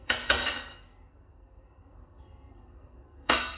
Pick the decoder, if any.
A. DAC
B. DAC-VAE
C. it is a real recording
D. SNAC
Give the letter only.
D